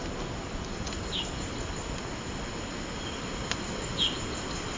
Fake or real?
real